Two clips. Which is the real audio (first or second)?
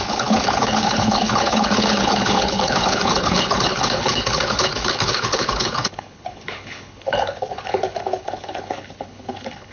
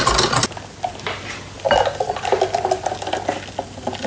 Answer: second